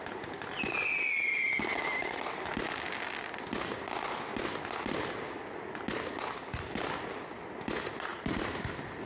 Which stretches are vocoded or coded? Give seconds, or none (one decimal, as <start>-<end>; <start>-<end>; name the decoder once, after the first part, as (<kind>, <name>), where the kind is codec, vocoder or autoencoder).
8.1-8.7 (vocoder, BigVGAN v2)